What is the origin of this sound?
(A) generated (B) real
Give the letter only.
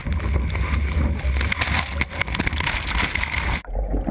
B